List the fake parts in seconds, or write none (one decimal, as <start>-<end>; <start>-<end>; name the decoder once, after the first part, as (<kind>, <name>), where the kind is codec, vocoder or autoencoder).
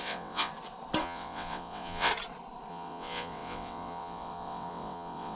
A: 0.0-0.5 (vocoder, WaveNeXt); 1.0-2.1; 2.7-5.4